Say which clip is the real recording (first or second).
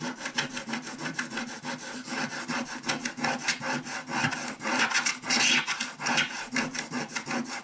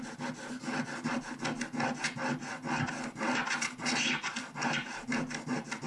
second